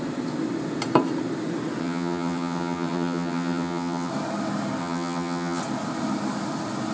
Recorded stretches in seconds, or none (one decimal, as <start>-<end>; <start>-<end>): 0.0-1.8; 4.1-4.8; 5.6-6.9